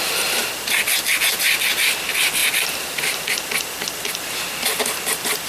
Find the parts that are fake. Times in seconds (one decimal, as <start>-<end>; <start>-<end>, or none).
2.4-3.3